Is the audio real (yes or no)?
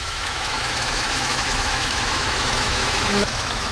no